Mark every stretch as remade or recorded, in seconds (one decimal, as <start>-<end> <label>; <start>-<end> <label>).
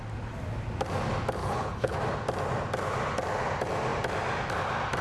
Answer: 0.0-1.4 recorded; 1.4-2.0 remade; 2.0-5.0 recorded